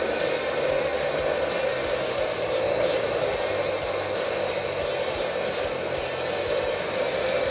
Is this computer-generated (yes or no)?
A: no